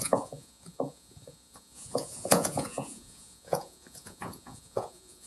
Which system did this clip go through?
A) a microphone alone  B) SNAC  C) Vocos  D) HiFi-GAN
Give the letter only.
C